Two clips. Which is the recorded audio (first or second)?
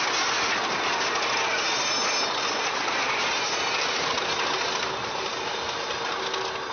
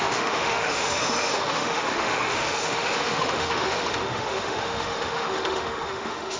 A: first